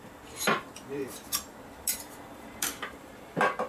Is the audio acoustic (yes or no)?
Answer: no